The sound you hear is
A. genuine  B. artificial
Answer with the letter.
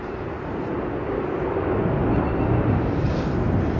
A